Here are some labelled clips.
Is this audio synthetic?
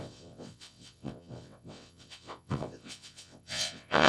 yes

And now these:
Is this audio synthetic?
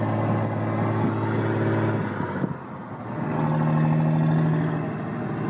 no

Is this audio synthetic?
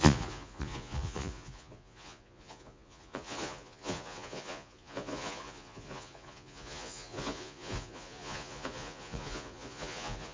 yes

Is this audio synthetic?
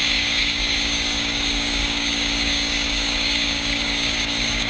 yes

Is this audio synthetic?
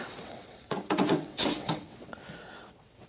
yes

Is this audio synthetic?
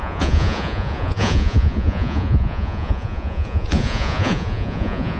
yes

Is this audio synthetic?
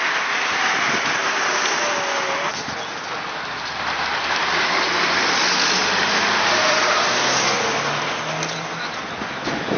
no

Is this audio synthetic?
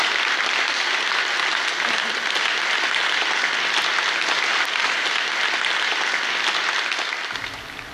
no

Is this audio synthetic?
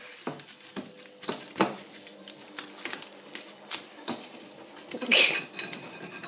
yes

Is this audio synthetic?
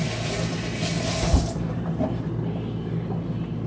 no